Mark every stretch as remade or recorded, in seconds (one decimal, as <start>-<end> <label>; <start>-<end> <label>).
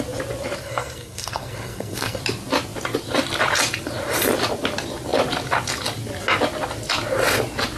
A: 0.0-0.6 recorded; 0.6-2.2 remade; 2.2-7.8 recorded